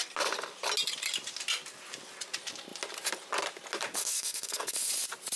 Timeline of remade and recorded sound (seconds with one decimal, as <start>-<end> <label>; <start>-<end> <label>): 0.0-4.0 recorded; 4.0-4.9 remade; 4.9-5.4 recorded